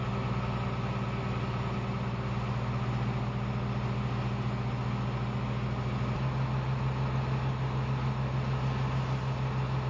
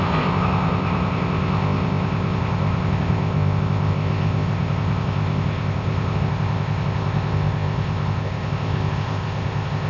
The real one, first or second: first